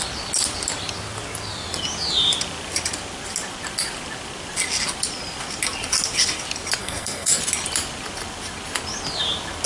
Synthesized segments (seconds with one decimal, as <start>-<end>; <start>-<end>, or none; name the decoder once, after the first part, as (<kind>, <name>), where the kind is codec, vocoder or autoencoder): 6.8-7.4 (codec, SNAC)